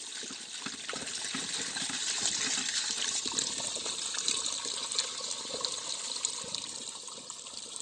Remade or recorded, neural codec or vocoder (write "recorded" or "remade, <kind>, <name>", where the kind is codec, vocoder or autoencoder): recorded